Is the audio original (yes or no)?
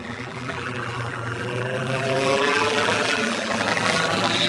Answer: no